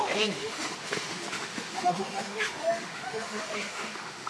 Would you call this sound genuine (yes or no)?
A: no